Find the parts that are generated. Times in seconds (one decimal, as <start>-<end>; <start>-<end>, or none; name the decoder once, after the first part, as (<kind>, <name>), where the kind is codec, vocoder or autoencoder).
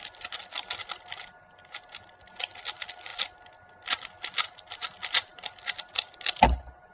none